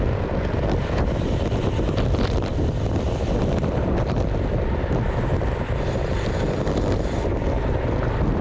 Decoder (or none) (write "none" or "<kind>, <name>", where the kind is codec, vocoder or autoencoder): vocoder, BigVGAN v2